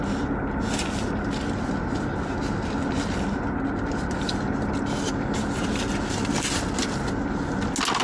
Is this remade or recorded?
recorded